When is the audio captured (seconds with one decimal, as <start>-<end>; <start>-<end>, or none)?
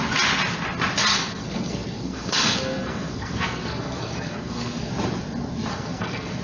0.0-1.1; 4.9-5.7